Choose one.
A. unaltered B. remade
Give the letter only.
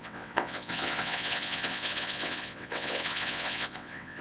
B